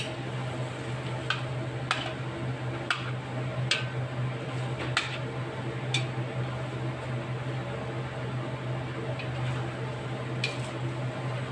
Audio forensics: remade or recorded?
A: recorded